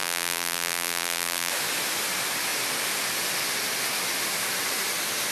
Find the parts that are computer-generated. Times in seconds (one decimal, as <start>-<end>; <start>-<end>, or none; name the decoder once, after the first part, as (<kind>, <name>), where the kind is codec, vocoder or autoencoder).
0.0-1.5 (vocoder, BigVGAN v2)